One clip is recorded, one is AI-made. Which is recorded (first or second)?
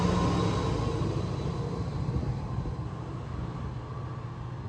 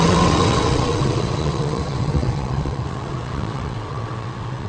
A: first